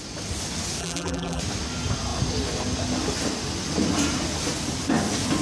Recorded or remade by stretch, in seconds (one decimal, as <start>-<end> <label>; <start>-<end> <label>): 0.0-0.8 recorded; 0.8-1.4 remade; 1.4-5.4 recorded